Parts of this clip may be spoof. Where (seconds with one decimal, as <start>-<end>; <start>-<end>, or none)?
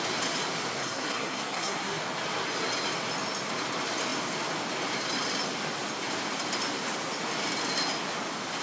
0.8-2.0